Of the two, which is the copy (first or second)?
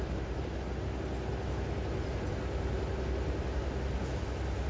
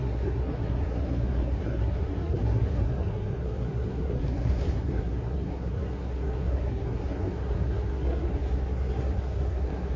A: second